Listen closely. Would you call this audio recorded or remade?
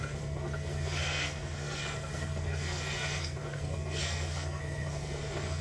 remade